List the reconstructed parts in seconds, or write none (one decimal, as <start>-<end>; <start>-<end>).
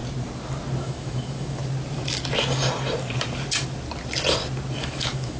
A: 0.8-1.6; 4.8-5.4